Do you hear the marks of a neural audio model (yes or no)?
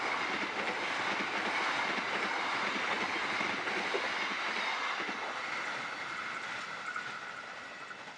no